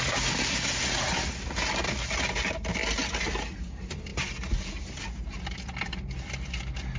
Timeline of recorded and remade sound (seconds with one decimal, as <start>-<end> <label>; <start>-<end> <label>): 0.0-7.0 recorded